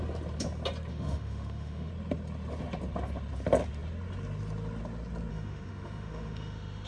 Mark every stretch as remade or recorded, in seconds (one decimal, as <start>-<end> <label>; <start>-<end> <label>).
0.0-0.9 recorded; 0.9-1.9 remade; 1.9-5.3 recorded; 5.3-6.9 remade